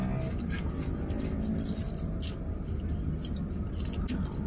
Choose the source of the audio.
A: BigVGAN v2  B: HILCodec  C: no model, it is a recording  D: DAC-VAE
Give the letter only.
C